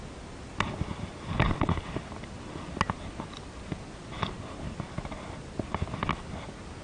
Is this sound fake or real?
real